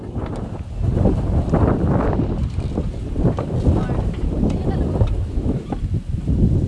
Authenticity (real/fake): real